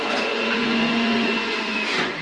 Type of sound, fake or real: fake